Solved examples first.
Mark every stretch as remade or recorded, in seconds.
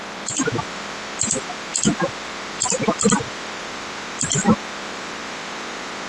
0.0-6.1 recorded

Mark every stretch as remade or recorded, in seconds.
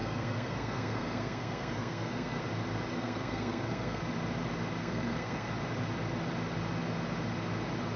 0.0-2.4 remade; 2.4-2.9 recorded; 2.9-4.0 remade; 4.0-4.8 recorded; 4.8-5.5 remade; 5.5-8.0 recorded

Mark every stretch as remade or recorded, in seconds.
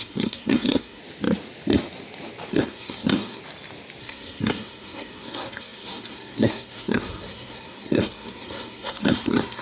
0.0-1.0 remade; 1.0-2.5 recorded; 2.5-3.4 remade; 3.4-4.0 recorded; 4.0-9.6 remade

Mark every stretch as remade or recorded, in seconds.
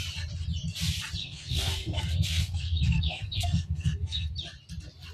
0.0-1.2 recorded; 1.2-4.3 remade; 4.3-5.1 recorded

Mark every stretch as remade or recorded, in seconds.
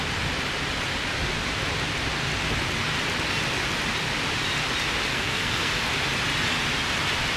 0.0-5.1 recorded; 5.1-5.7 remade; 5.7-7.4 recorded